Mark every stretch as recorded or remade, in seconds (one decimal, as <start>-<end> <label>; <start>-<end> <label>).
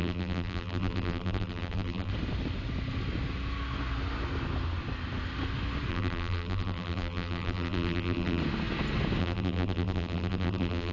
0.0-2.1 remade; 2.1-5.9 recorded; 5.9-8.4 remade; 8.4-9.2 recorded; 9.2-10.9 remade